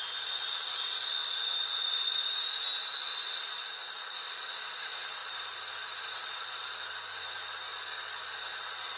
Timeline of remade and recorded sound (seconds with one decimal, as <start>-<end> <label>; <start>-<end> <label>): 0.0-1.2 recorded; 1.2-3.6 remade; 3.6-5.2 recorded; 5.2-6.7 remade; 6.7-9.0 recorded